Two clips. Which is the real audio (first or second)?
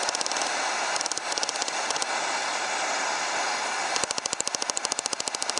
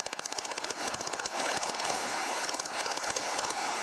first